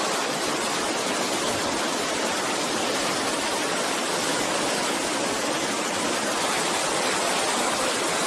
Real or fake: real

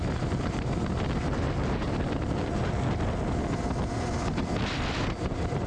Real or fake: real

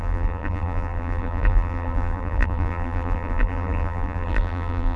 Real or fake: fake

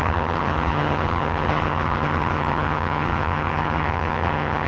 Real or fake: fake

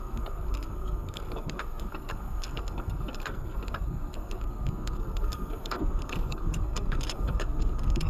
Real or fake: fake